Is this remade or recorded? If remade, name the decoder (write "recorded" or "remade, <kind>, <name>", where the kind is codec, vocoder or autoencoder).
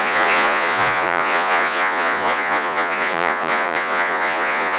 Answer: remade, vocoder, Vocos